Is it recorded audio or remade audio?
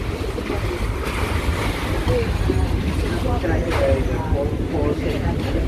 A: recorded